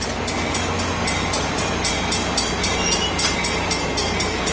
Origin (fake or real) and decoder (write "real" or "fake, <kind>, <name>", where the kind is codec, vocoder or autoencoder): real